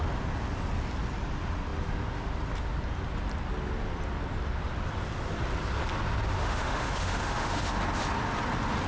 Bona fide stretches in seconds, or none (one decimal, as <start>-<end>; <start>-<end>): 0.0-6.4; 7.8-8.9